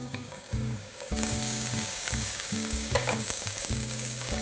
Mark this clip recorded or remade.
remade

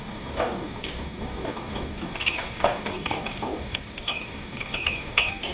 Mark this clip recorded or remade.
remade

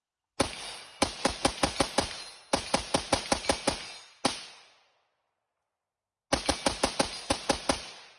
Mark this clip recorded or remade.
recorded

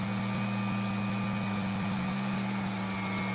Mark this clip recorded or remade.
recorded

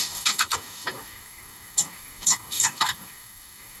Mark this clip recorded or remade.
remade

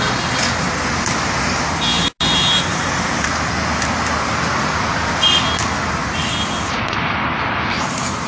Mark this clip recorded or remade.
recorded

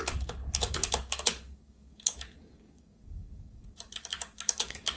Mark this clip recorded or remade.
remade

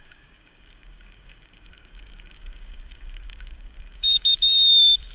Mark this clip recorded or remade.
remade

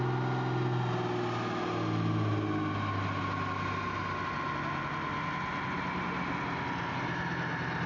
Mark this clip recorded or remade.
recorded